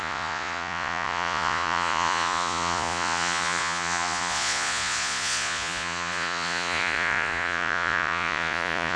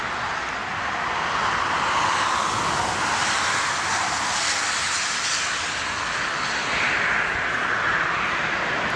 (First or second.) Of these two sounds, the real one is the second